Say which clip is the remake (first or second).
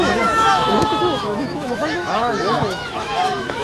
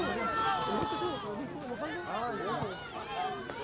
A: first